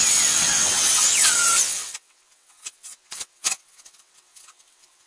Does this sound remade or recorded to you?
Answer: remade